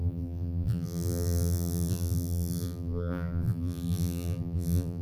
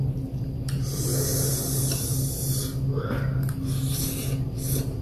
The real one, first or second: second